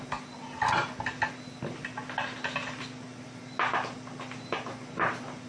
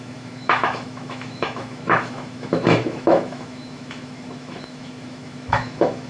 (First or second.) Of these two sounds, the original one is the first